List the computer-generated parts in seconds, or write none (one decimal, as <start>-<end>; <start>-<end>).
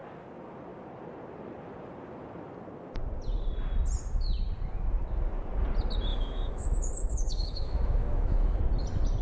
6.1-8.6